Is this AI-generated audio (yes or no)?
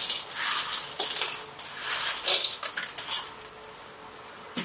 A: no